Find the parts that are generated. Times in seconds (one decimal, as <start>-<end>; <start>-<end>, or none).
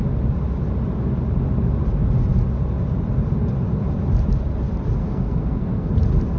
5.0-5.9